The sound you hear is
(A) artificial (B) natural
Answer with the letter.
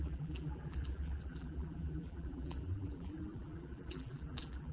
A